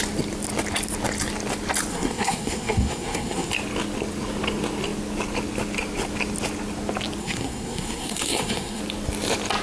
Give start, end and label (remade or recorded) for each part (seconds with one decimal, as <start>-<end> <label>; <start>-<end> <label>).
0.0-1.9 recorded; 1.9-3.5 remade; 3.5-7.2 recorded; 7.2-8.8 remade; 8.8-9.6 recorded